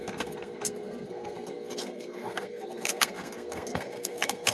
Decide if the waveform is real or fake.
fake